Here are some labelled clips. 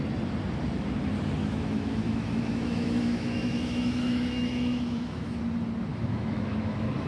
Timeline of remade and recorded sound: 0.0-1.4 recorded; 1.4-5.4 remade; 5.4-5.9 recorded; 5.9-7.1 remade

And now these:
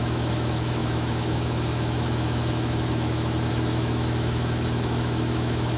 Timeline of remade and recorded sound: 0.0-5.8 remade